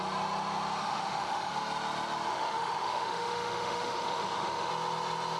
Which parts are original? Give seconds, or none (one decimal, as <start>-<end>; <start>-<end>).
0.0-0.8; 1.5-2.3; 4.7-5.4